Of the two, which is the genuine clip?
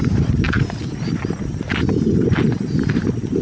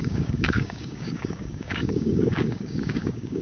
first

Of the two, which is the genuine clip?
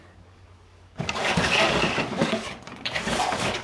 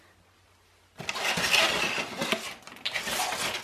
second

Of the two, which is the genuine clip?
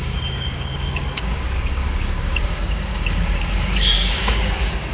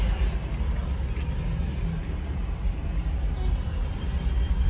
second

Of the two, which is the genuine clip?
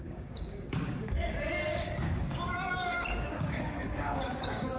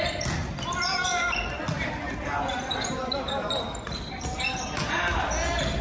second